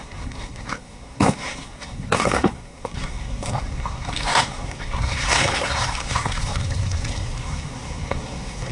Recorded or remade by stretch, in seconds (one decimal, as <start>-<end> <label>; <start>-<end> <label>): 0.0-8.7 remade